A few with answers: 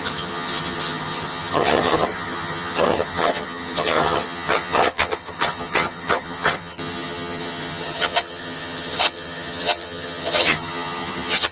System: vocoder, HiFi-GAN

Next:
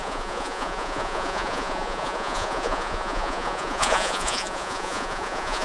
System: vocoder, Vocos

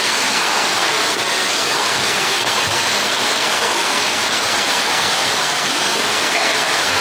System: codec, SNAC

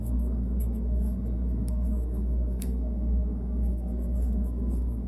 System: codec, SNAC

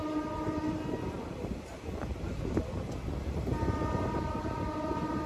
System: vocoder, BigVGAN v2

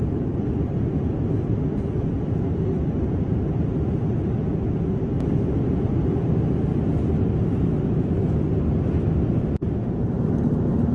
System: none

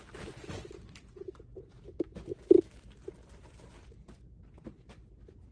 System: none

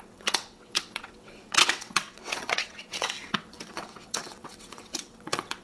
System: vocoder, WaveNeXt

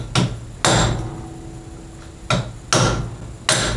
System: none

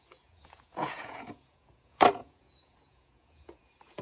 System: vocoder, Vocos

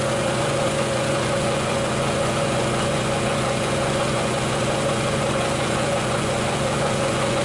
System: vocoder, Vocos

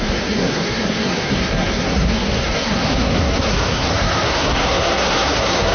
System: codec, SNAC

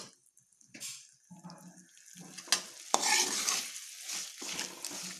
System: none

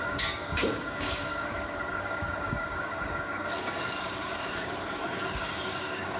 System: codec, DAC